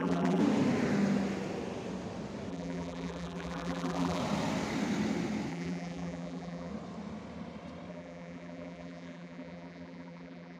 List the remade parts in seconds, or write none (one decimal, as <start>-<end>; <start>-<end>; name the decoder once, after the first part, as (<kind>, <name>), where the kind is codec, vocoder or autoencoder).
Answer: 0.0-0.4 (vocoder, BigVGAN v2); 2.5-4.2; 5.5-6.7; 7.9-10.6